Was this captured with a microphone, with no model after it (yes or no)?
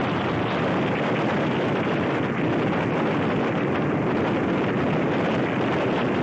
yes